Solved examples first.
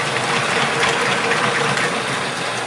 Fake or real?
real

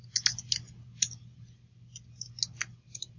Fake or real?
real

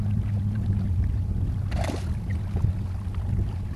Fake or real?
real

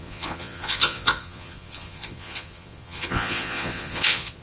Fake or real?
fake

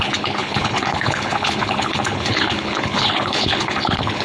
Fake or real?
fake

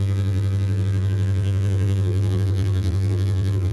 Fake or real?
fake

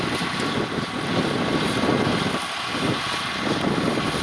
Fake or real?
real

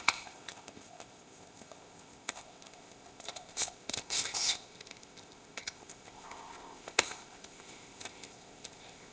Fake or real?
fake